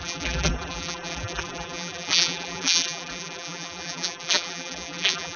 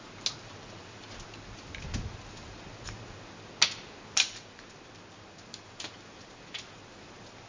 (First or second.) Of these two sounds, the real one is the second